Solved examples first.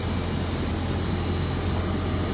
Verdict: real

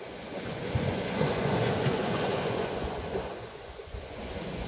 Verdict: fake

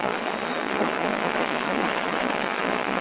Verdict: fake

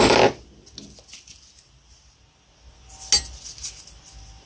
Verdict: real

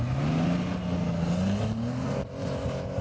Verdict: real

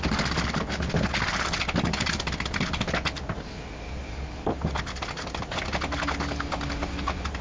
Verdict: real